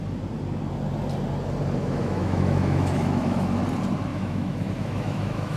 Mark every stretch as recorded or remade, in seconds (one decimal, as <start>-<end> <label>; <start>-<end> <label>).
0.0-1.8 recorded; 1.8-3.6 remade; 3.6-4.1 recorded; 4.1-5.6 remade